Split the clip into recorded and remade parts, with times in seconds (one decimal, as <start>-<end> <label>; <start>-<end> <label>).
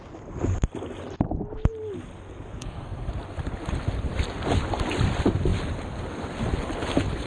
0.0-2.6 recorded; 2.6-3.1 remade; 3.1-7.3 recorded